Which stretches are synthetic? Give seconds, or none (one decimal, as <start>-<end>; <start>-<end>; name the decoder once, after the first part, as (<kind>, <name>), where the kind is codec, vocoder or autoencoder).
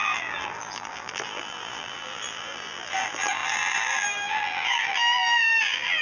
0.0-6.0 (vocoder, BigVGAN v2)